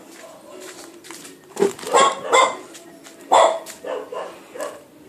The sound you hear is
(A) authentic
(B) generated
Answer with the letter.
B